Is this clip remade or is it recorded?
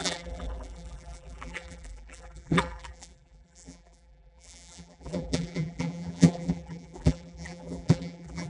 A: remade